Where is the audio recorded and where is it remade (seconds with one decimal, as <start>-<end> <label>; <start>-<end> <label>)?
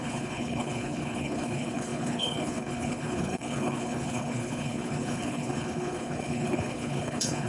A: 0.0-7.5 remade